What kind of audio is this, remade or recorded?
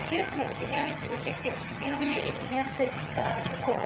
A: remade